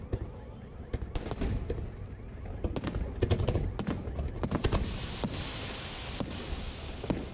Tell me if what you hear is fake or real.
real